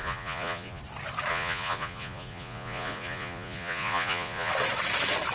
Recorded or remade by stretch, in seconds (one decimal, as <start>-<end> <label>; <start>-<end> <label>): 0.0-0.8 remade; 0.8-1.3 recorded; 1.3-4.5 remade; 4.5-5.3 recorded